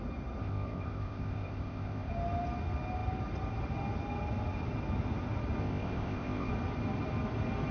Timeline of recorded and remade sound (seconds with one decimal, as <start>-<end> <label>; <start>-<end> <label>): 0.0-0.4 recorded; 0.4-2.1 remade; 2.1-5.6 recorded; 5.6-6.5 remade; 6.5-7.7 recorded